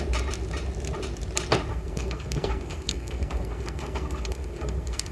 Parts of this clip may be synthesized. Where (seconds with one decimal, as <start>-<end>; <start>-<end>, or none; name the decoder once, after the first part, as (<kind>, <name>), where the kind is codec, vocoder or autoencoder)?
1.7-5.1 (codec, SNAC)